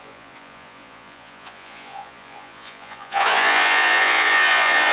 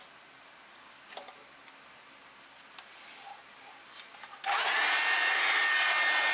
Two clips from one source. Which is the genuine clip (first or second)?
second